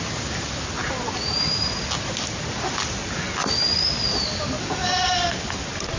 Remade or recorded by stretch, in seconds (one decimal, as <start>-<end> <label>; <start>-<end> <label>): 0.0-6.0 recorded